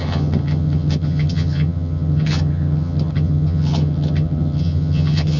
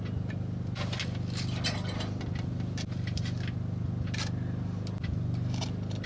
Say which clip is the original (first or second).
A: second